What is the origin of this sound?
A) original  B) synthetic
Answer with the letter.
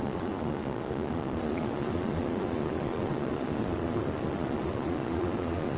B